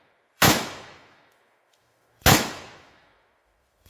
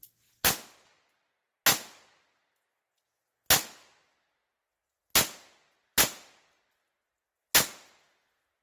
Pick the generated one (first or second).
first